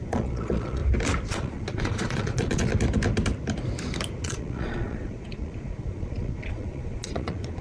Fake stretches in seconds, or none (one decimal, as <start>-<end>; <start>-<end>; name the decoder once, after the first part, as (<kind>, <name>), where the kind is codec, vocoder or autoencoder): 0.0-0.8 (vocoder, Vocos); 1.3-2.7; 4.2-7.6